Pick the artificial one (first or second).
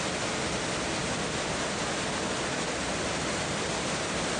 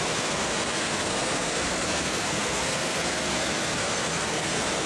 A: second